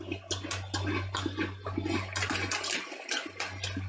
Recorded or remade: recorded